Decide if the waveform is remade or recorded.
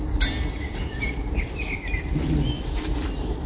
remade